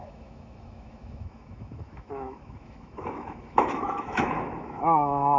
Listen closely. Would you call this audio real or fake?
fake